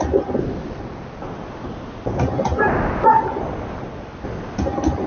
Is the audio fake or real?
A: real